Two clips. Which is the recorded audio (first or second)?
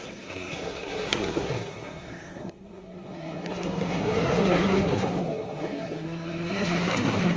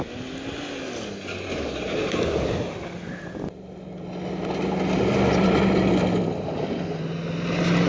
second